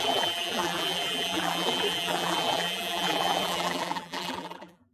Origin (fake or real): fake